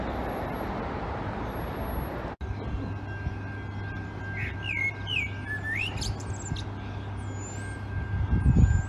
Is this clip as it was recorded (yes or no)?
yes